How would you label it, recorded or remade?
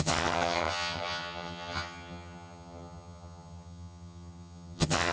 remade